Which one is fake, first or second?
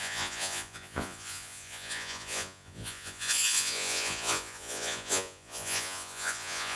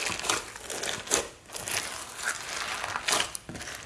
first